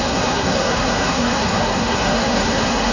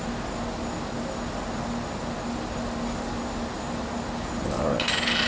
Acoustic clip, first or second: second